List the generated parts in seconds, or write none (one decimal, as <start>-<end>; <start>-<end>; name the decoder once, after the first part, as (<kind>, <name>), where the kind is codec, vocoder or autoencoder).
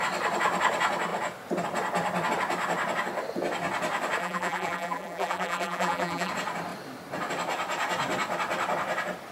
4.2-6.3 (vocoder, BigVGAN v2)